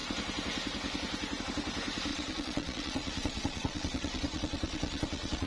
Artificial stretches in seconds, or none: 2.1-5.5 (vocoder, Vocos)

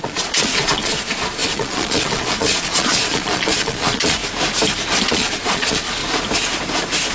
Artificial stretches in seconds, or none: 0.0-4.2 (vocoder, Vocos); 5.1-6.0

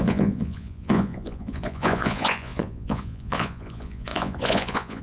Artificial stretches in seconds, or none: 0.0-5.0 (vocoder, Vocos)

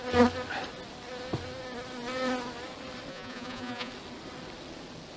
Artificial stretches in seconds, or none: 3.1-3.9 (vocoder, Vocos)